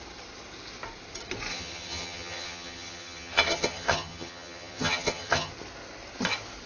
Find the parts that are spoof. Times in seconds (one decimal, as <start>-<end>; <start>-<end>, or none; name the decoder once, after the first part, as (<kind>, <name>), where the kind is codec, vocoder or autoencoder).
1.5-5.5 (vocoder, HiFi-GAN)